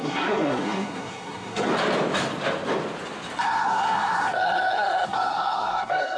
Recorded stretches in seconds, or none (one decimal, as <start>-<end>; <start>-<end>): 1.7-3.4